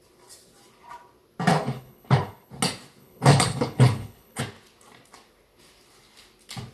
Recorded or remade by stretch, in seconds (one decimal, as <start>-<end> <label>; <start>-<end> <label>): 0.0-1.5 recorded; 1.5-2.5 remade; 2.5-3.0 recorded; 3.0-4.4 remade; 4.4-6.7 recorded